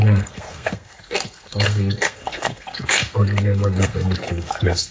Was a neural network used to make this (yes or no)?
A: yes